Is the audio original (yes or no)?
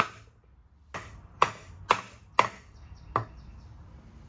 yes